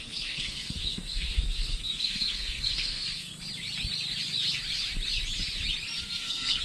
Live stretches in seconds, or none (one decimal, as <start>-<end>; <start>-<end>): 3.3-6.0